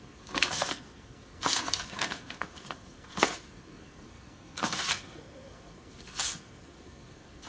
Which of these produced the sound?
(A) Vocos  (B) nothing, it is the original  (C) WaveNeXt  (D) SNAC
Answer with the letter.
D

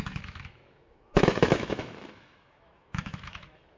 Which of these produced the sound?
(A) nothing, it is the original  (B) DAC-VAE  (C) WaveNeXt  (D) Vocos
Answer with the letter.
B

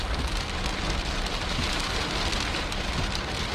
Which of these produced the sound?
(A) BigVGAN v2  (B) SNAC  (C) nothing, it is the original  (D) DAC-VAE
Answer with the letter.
A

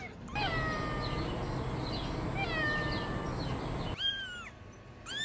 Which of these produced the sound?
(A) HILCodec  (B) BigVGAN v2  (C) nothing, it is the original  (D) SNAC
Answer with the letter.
C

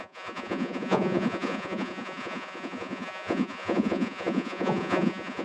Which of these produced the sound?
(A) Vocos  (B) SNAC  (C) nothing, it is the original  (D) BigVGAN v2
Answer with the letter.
A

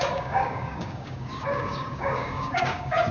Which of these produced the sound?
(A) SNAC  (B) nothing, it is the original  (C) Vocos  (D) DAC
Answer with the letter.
D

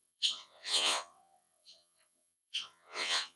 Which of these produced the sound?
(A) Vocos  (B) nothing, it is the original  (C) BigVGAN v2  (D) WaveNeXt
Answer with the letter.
D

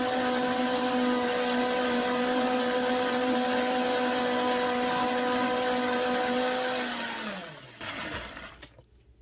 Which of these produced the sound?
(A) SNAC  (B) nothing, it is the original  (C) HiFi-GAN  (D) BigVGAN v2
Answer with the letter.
B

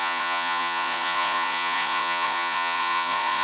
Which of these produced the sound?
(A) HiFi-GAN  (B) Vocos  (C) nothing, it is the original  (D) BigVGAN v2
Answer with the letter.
B